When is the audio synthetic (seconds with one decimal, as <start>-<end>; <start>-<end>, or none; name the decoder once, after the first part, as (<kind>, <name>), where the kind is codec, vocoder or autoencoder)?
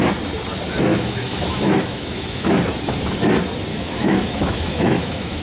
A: 0.9-2.5 (autoencoder, DAC-VAE); 3.7-5.4